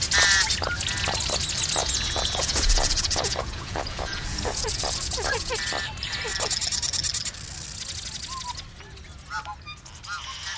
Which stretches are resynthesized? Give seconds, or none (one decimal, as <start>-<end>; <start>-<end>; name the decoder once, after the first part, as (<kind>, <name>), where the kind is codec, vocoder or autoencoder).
1.8-5.5 (vocoder, Vocos)